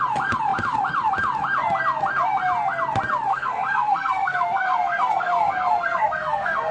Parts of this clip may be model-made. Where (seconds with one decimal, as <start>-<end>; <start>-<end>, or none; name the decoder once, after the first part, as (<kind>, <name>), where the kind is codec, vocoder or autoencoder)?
3.3-6.7 (codec, SNAC)